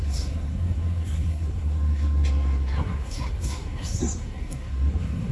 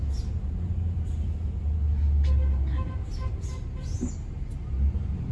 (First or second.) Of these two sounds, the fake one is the first